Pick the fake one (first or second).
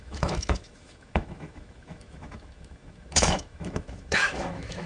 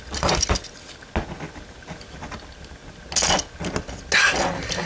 first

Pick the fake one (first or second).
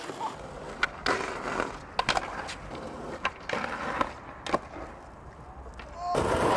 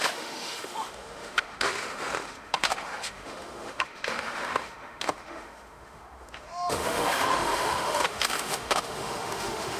second